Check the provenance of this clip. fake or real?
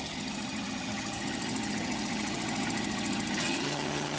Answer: fake